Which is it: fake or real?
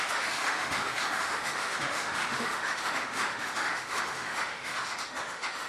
fake